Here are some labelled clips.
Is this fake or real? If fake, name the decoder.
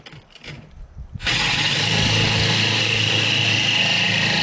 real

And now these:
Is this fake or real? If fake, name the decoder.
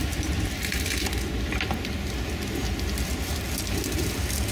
real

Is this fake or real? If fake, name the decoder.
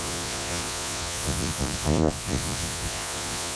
fake, vocoder, Vocos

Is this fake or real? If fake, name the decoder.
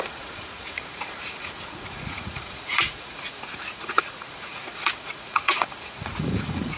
fake, vocoder, Vocos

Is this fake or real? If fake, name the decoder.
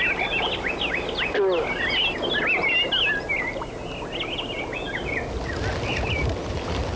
real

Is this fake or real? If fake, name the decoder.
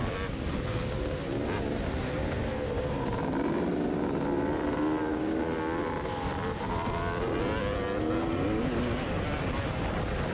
real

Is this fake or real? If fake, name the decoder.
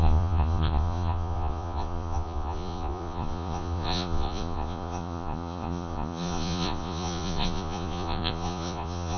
fake, vocoder, Vocos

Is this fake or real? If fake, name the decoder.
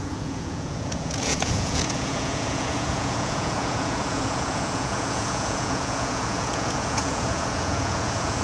fake, vocoder, Vocos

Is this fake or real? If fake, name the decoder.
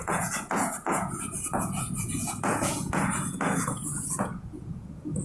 fake, vocoder, Vocos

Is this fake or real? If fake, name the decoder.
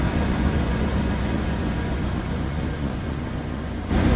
fake, vocoder, Vocos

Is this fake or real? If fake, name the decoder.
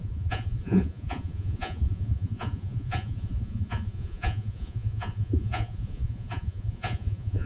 fake, vocoder, Vocos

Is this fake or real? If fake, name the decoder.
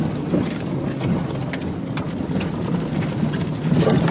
real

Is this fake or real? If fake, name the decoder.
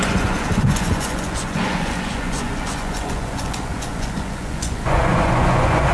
fake, vocoder, Vocos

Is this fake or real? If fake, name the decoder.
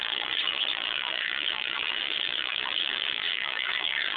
fake, vocoder, Vocos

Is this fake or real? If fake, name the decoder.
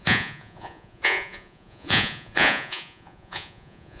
fake, vocoder, Vocos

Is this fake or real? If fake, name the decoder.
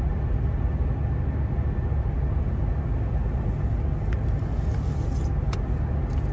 real